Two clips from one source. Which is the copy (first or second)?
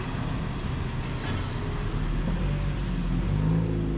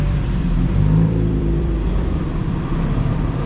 second